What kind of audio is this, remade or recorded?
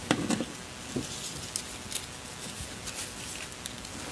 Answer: recorded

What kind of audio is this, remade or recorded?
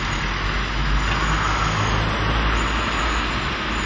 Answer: recorded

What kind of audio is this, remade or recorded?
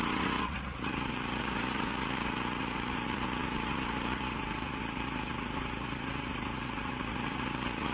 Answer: remade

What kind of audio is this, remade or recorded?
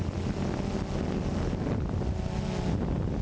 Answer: recorded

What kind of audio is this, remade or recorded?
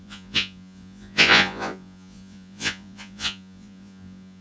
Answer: remade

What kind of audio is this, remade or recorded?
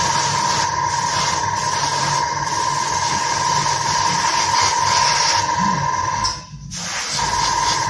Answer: recorded